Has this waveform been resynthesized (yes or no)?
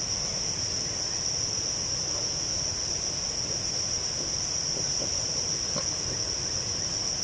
no